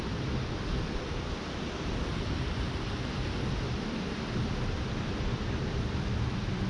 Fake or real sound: fake